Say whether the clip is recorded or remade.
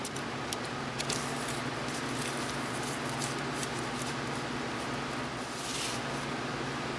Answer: recorded